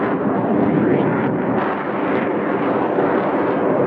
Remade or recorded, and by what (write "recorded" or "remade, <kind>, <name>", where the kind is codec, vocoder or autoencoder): remade, vocoder, BigVGAN v2